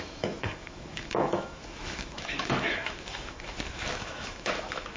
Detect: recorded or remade remade